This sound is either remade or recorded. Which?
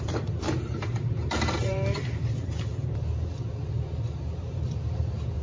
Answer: remade